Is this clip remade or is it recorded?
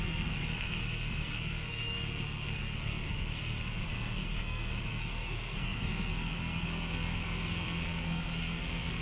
remade